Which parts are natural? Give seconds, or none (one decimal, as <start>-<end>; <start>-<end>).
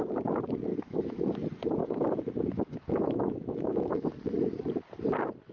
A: 0.0-0.7; 1.2-1.8; 4.1-5.5